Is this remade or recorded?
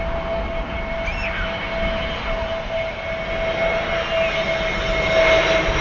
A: recorded